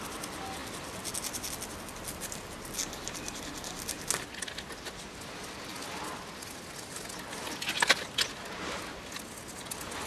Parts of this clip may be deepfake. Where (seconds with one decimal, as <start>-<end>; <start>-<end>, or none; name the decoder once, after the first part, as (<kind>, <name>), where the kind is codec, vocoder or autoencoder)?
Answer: none